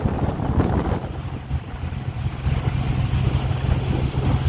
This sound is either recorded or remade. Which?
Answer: recorded